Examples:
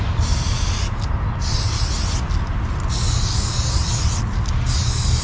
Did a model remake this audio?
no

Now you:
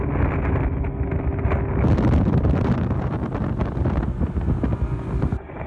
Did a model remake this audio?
no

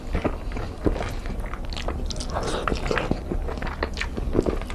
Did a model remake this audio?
no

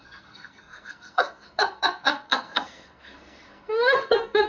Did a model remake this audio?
yes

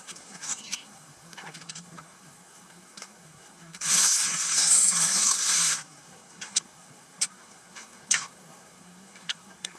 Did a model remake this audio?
yes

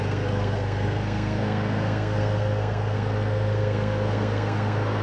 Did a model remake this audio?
yes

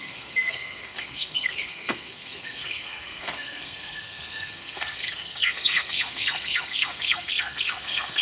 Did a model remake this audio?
yes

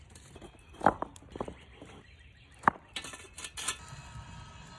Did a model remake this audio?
no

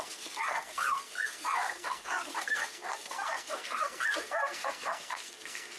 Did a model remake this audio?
yes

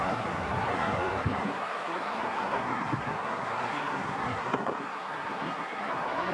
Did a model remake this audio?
yes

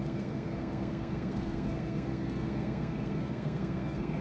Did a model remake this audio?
yes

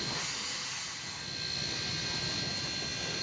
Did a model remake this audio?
no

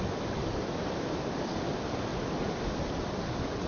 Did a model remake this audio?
no